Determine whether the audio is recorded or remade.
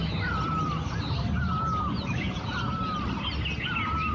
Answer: recorded